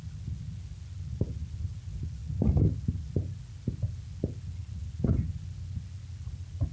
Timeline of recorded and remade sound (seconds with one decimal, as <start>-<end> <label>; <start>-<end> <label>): 0.0-6.7 recorded